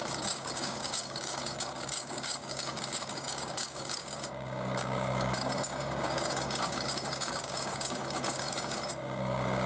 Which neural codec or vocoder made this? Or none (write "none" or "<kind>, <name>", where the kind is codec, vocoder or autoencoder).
codec, DAC